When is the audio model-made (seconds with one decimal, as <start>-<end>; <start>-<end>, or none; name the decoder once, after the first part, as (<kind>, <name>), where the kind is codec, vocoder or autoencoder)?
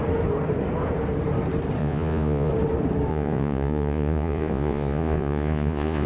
1.8-2.5 (vocoder, Vocos); 3.1-6.1